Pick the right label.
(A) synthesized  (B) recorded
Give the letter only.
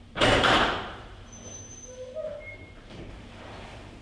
A